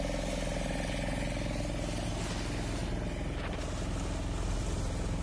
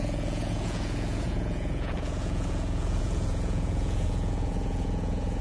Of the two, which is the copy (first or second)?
second